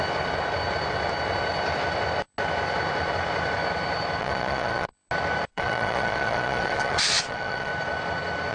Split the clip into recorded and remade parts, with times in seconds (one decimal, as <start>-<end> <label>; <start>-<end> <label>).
0.0-4.2 recorded; 4.2-4.9 remade; 4.9-5.5 recorded; 5.5-7.7 remade; 7.7-8.5 recorded